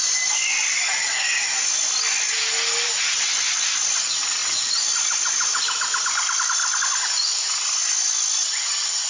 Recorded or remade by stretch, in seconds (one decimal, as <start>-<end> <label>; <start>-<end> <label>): 0.0-4.4 recorded; 4.4-5.1 remade; 5.1-9.1 recorded